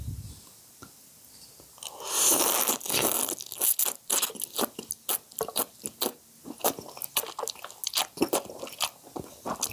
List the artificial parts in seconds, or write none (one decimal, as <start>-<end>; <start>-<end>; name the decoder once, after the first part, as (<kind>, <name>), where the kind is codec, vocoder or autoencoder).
none